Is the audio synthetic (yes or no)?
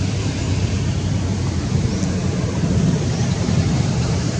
yes